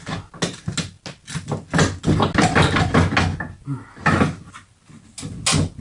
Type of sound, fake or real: real